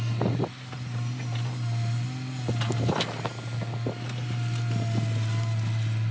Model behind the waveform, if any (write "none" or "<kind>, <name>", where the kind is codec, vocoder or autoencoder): none